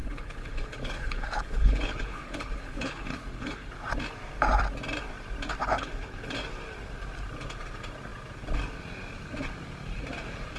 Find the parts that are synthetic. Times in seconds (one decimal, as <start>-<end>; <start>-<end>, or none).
0.0-3.7; 5.6-6.3